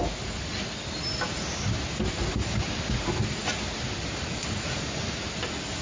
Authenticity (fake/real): real